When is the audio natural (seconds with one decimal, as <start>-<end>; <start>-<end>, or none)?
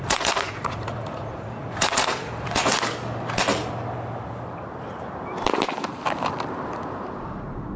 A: 2.7-7.2